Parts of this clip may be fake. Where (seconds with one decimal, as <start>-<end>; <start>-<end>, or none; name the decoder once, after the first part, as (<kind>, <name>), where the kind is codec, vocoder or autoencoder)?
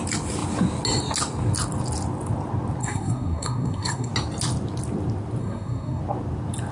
2.8-4.1 (codec, SNAC); 5.4-6.0